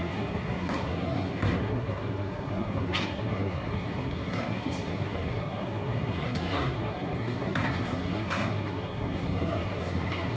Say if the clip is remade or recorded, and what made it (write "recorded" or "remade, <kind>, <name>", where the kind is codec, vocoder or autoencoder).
remade, codec, SNAC